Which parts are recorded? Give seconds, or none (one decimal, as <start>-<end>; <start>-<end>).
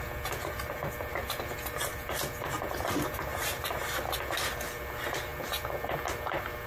0.0-6.7